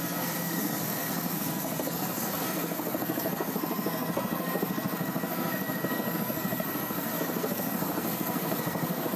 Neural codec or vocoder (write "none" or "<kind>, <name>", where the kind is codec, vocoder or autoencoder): codec, SNAC